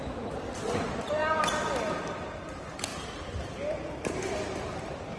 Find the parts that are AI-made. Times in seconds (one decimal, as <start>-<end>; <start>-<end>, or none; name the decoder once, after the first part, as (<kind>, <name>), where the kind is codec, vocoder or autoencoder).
0.0-1.2 (vocoder, BigVGAN v2); 1.9-2.9; 3.9-5.2